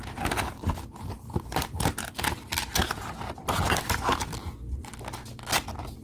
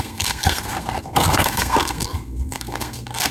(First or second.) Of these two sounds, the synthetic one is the second